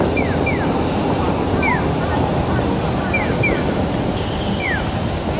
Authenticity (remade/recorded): recorded